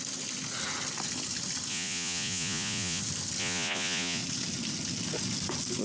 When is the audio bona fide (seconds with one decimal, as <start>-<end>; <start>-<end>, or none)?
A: 0.0-1.7; 3.0-3.4; 4.2-5.8